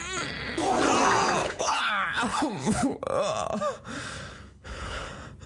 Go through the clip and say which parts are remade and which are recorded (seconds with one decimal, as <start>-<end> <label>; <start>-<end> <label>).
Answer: 0.0-1.4 recorded; 1.4-1.9 remade; 1.9-2.3 recorded; 2.3-3.0 remade; 3.0-4.3 recorded; 4.3-5.1 remade; 5.1-5.5 recorded